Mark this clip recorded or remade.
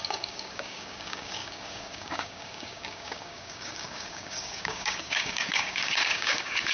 remade